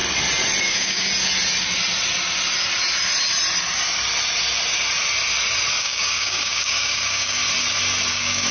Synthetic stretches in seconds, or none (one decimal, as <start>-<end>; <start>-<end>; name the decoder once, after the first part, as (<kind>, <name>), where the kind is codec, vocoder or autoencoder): 0.6-1.1 (codec, DAC); 5.8-7.4; 8.1-8.5